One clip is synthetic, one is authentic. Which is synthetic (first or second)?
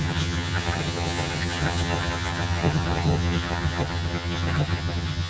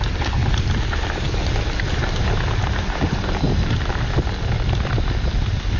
first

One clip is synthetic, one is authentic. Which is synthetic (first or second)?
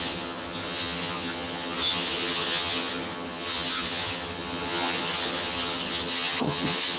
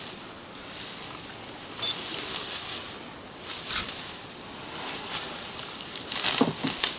first